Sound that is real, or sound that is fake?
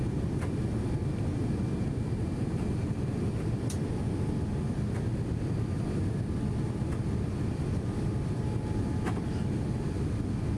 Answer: real